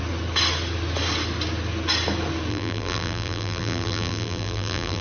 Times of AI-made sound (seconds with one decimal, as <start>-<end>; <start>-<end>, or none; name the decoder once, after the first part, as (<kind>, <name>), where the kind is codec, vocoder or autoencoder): 2.5-5.0 (vocoder, BigVGAN v2)